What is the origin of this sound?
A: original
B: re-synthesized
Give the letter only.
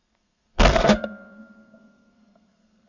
B